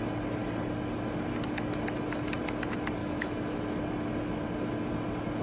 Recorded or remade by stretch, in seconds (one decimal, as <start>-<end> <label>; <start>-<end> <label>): 0.0-3.0 recorded; 3.0-3.6 remade; 3.6-5.4 recorded